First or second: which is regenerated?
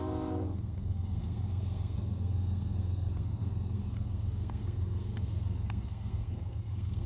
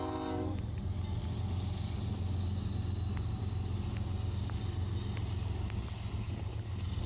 first